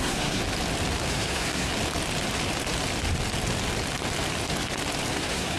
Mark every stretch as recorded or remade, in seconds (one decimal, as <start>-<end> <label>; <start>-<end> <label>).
0.0-0.4 remade; 0.4-1.1 recorded; 1.1-1.7 remade; 1.7-5.1 recorded; 5.1-5.6 remade